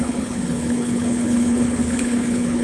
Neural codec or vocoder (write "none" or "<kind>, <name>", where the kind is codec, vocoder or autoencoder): codec, HILCodec